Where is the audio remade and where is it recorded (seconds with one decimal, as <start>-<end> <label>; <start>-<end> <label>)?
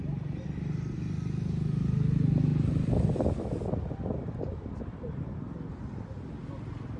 0.0-7.0 recorded